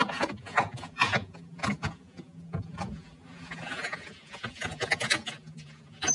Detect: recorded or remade remade